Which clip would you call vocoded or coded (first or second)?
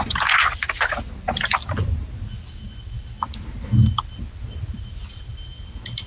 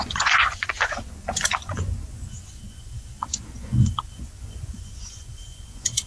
second